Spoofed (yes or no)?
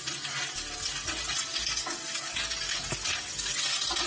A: no